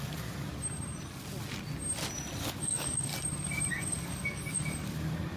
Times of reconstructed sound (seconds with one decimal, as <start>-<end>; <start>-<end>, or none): 0.0-0.5; 2.4-3.1; 3.7-5.4